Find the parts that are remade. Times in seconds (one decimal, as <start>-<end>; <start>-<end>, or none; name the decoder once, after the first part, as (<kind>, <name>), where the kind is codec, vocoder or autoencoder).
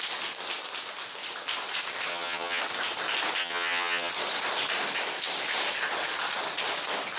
2.1-2.6 (vocoder, HiFi-GAN); 3.4-4.1